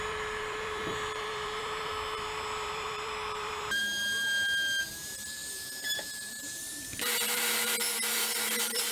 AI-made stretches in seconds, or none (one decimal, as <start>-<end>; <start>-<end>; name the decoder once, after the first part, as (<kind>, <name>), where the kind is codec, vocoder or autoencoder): 0.0-3.8 (vocoder, BigVGAN v2); 4.8-8.9